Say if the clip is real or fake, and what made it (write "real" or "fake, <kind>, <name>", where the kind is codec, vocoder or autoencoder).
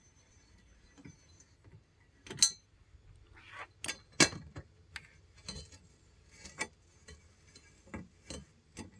real